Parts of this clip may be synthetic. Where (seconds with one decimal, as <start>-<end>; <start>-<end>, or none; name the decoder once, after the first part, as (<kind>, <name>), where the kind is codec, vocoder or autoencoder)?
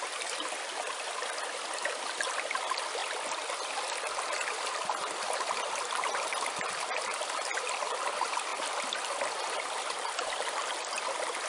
0.0-3.0 (vocoder, BigVGAN v2); 5.1-8.5; 9.3-11.5